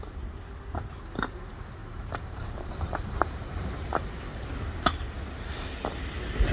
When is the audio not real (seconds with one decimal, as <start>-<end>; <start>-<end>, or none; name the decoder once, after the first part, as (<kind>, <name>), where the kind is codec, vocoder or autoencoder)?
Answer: 1.8-4.2 (vocoder, BigVGAN v2)